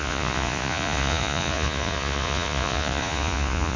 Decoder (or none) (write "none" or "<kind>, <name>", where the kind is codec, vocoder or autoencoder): vocoder, Vocos